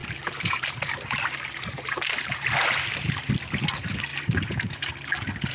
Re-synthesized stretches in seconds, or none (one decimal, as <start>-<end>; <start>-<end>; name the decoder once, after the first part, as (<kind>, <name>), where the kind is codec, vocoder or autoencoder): 0.0-3.3 (vocoder, BigVGAN v2); 4.1-4.9